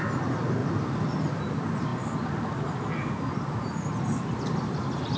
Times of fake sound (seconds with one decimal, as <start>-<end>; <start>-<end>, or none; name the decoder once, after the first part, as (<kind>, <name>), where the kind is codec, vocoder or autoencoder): 0.6-1.4 (vocoder, BigVGAN v2)